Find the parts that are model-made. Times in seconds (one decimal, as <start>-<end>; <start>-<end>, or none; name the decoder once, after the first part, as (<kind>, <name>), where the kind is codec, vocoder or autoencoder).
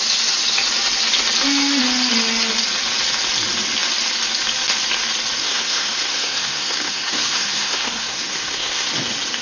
5.4-8.9 (codec, SNAC)